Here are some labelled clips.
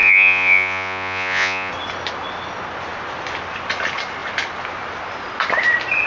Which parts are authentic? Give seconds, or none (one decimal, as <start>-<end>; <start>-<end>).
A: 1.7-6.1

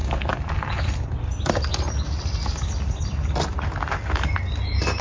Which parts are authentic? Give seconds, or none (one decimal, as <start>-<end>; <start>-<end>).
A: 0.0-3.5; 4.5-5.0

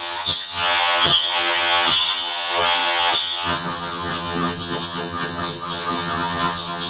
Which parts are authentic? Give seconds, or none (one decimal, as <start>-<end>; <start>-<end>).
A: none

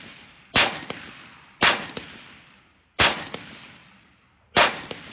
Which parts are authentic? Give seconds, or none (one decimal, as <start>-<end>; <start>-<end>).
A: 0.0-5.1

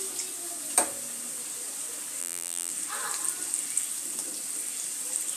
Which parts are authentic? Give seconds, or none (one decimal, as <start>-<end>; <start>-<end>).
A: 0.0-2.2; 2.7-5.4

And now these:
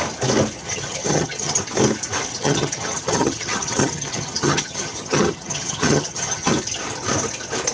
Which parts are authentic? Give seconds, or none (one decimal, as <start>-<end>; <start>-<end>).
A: 0.0-0.6; 1.6-2.3; 6.5-7.7

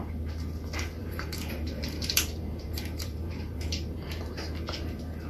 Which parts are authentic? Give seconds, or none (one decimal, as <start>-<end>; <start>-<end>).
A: 0.0-1.0; 4.2-5.3